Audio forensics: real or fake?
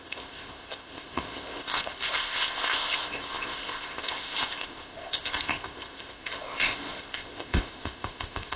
fake